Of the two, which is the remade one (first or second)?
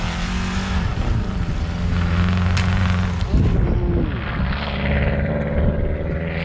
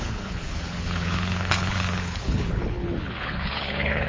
second